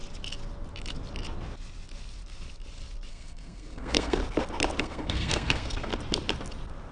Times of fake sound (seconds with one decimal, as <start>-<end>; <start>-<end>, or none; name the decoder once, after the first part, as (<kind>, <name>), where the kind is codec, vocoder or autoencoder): 3.1-4.2 (codec, SNAC); 4.8-5.9